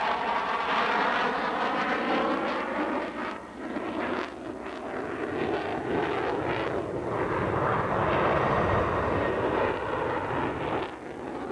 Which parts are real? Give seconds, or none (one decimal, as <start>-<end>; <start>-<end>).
0.0-5.7; 6.4-11.5